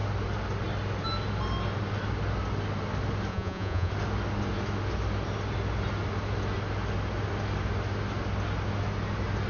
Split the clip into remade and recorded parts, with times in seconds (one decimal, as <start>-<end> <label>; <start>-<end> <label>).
0.0-3.3 recorded; 3.3-3.9 remade; 3.9-9.5 recorded